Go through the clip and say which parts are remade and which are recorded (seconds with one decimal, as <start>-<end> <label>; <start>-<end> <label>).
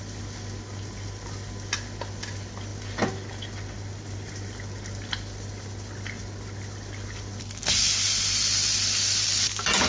0.0-9.9 recorded